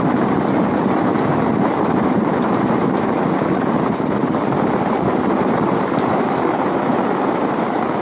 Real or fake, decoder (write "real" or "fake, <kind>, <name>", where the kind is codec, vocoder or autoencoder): fake, vocoder, BigVGAN v2